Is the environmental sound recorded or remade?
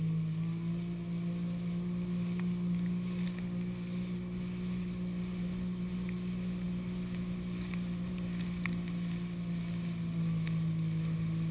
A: recorded